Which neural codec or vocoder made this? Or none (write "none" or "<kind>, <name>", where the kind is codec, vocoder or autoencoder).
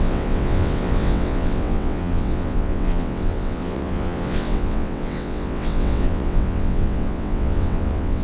vocoder, WaveNeXt